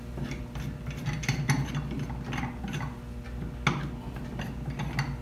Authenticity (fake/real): real